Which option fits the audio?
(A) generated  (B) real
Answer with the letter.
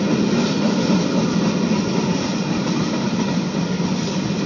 B